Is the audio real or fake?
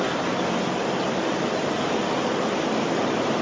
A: real